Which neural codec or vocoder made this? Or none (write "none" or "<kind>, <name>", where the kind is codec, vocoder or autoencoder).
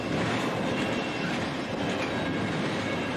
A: none